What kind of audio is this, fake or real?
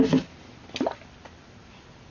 real